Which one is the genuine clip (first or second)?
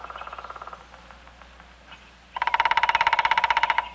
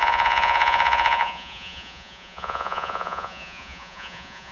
first